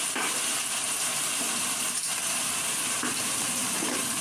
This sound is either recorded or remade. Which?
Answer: remade